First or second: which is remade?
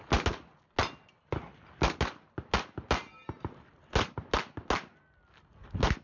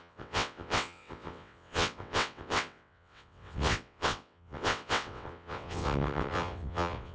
second